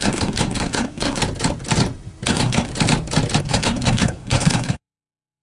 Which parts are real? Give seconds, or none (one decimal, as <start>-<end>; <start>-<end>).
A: 1.2-2.3; 2.7-3.4